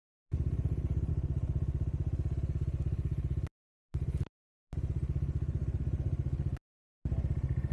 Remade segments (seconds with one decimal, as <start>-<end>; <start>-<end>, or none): none